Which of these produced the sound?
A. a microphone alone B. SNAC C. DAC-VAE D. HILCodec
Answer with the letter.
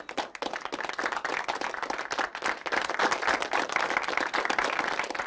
A